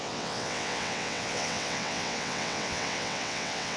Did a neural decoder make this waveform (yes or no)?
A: yes